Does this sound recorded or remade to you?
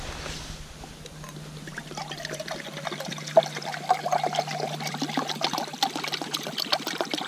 recorded